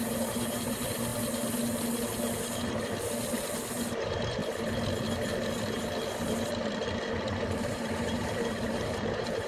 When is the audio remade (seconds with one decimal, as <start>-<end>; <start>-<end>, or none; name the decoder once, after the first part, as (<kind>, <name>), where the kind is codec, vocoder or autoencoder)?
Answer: 0.0-1.1 (vocoder, BigVGAN v2); 3.7-4.4; 7.6-9.5